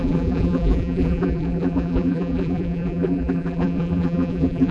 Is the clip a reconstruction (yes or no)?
yes